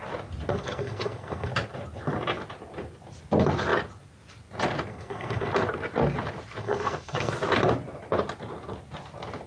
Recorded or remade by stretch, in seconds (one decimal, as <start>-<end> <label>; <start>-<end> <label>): 0.0-0.5 recorded; 0.5-1.5 remade; 1.5-4.9 recorded; 4.9-5.5 remade; 5.5-6.6 recorded; 6.6-7.3 remade; 7.3-9.5 recorded